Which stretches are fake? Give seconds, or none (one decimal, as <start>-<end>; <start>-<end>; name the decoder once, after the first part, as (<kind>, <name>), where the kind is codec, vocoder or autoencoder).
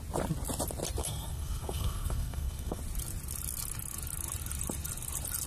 1.0-2.8 (codec, SNAC)